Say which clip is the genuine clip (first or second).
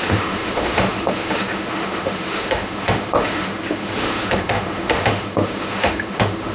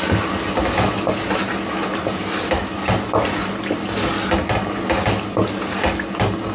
second